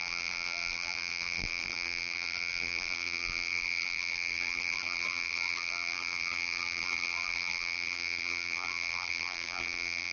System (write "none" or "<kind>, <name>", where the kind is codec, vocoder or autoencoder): vocoder, BigVGAN v2